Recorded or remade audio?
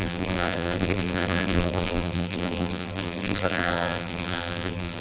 remade